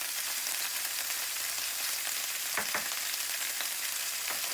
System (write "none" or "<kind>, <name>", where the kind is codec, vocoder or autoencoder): vocoder, BigVGAN v2